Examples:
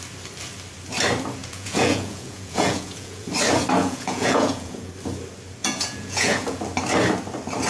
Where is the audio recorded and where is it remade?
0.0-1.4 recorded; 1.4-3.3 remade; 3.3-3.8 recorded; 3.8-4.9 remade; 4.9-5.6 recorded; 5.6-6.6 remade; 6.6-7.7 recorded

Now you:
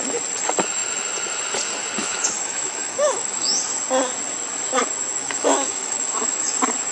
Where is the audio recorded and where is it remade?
0.0-2.0 recorded; 2.0-3.6 remade; 3.6-5.2 recorded; 5.2-6.5 remade; 6.5-6.9 recorded

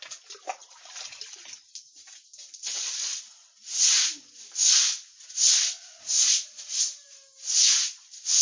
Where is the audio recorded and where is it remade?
0.0-8.4 recorded

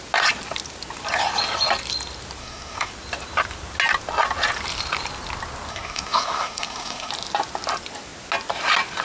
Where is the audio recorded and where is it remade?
0.0-2.4 recorded; 2.4-2.9 remade; 2.9-5.7 recorded; 5.7-7.1 remade; 7.1-9.0 recorded

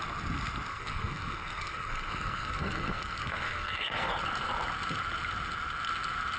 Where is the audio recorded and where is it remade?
0.0-0.7 recorded; 0.7-4.1 remade; 4.1-6.4 recorded

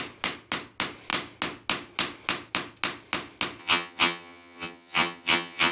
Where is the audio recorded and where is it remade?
0.0-3.6 recorded; 3.6-5.7 remade

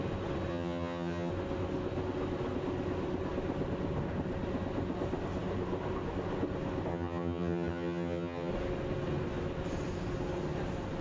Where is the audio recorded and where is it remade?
0.0-0.5 recorded; 0.5-1.3 remade; 1.3-6.9 recorded; 6.9-8.5 remade; 8.5-11.0 recorded

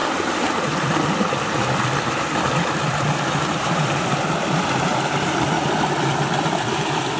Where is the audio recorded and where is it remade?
0.0-2.7 recorded; 2.7-4.9 remade; 4.9-6.8 recorded; 6.8-7.2 remade